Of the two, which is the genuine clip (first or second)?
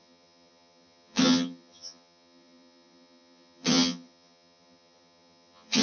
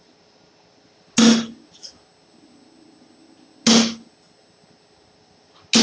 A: second